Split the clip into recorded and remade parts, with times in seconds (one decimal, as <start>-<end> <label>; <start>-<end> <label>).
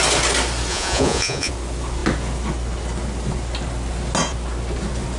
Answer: 0.0-0.7 recorded; 0.7-1.5 remade; 1.5-5.2 recorded